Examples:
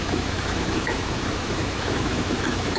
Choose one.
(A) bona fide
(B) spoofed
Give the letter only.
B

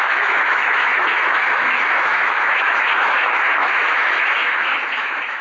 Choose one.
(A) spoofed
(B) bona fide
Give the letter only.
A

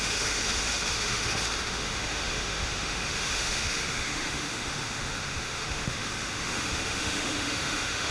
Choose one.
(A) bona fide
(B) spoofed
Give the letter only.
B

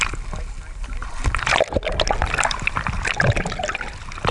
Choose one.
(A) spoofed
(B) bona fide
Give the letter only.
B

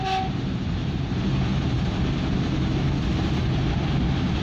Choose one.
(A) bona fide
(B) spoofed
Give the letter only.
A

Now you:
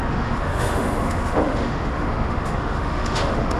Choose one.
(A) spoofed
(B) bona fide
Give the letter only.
A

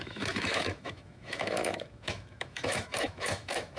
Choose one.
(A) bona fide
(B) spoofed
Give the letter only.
B